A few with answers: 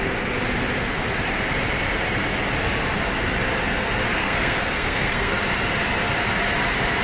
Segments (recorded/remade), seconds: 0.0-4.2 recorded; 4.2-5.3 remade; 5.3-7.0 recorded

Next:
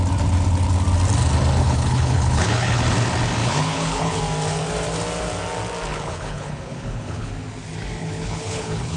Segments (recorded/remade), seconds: 0.0-1.6 recorded; 1.6-2.8 remade; 2.8-3.4 recorded; 3.4-4.2 remade; 4.2-5.9 recorded; 5.9-7.3 remade; 7.3-8.0 recorded; 8.0-9.0 remade

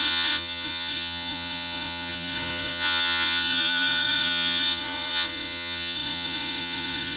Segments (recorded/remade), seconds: 0.0-7.2 remade